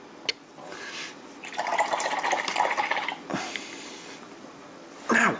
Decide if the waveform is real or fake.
real